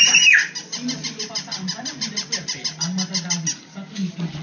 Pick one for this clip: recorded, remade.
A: recorded